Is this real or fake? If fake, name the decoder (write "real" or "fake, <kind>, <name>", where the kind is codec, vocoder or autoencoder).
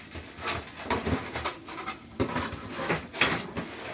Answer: real